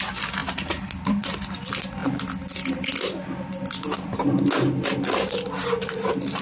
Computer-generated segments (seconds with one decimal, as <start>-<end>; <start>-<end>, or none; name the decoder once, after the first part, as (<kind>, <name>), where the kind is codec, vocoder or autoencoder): none